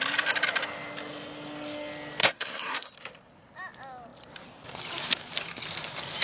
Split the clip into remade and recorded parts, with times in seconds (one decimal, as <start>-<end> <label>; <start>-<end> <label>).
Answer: 0.0-2.2 recorded; 2.2-2.9 remade; 2.9-6.2 recorded